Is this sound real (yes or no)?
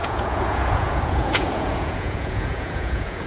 no